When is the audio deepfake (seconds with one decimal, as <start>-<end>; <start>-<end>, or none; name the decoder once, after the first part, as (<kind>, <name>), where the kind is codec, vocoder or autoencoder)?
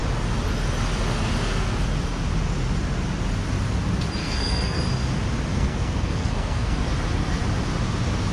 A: 4.2-4.8 (codec, SNAC); 5.5-6.9